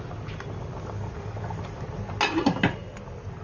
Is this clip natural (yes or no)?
yes